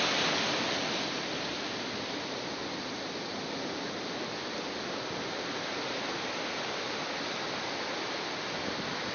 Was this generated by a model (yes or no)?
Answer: no